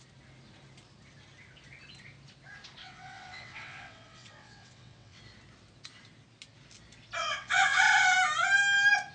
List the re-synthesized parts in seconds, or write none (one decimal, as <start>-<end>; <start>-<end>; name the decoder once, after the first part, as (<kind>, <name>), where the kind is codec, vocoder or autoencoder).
2.8-5.2 (vocoder, WaveNeXt); 7.2-7.8